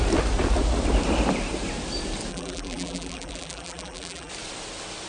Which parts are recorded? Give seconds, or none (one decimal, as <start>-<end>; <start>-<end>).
0.0-2.3; 4.3-5.1